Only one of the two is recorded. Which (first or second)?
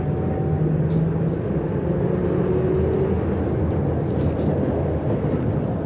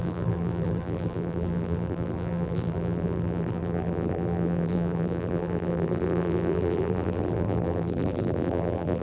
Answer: first